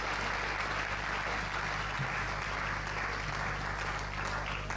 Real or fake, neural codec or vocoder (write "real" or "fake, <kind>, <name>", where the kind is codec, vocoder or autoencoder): real